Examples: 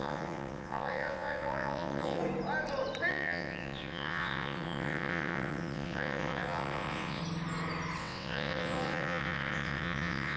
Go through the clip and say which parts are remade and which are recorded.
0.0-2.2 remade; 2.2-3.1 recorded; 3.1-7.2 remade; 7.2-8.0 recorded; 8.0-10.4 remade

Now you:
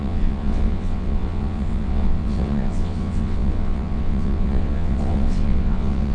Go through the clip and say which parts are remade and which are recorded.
0.0-6.1 remade

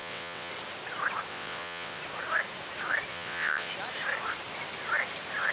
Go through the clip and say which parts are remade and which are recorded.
0.0-0.5 remade; 0.5-1.3 recorded; 1.3-2.0 remade; 2.0-3.1 recorded; 3.1-3.7 remade; 3.7-5.5 recorded

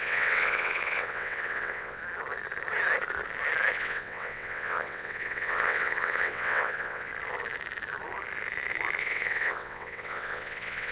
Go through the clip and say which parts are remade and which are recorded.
0.0-2.0 remade; 2.0-3.7 recorded; 3.7-7.1 remade; 7.1-9.0 recorded; 9.0-10.9 remade

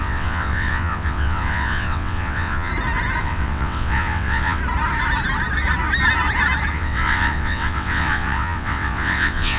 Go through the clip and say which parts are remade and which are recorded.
0.0-2.7 remade; 2.7-3.2 recorded; 3.2-4.6 remade; 4.6-6.7 recorded; 6.7-9.6 remade

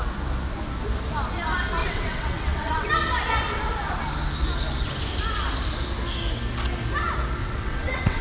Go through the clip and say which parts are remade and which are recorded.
0.0-1.8 recorded; 1.8-2.9 remade; 2.9-7.4 recorded; 7.4-8.2 remade